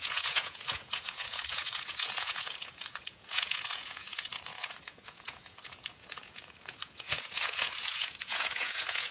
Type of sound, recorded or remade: remade